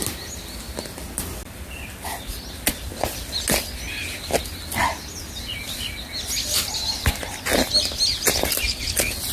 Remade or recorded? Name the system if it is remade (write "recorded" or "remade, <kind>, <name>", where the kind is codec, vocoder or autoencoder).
recorded